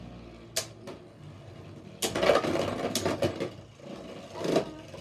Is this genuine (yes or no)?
yes